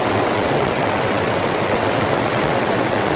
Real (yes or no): no